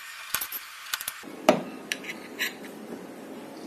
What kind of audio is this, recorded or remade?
remade